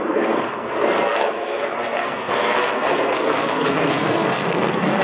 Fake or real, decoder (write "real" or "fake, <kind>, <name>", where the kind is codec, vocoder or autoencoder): fake, codec, SNAC